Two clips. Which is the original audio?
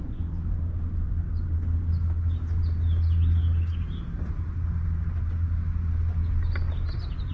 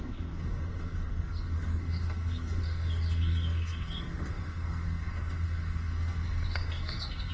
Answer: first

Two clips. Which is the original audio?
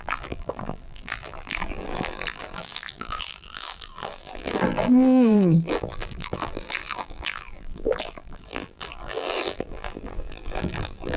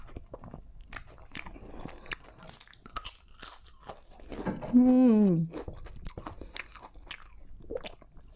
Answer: second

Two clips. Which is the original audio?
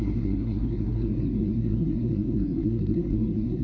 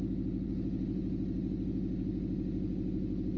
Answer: second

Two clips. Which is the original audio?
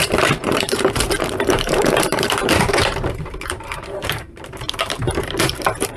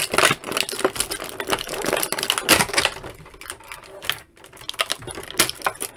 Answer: second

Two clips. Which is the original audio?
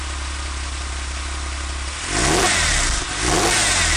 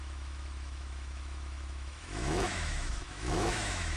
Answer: first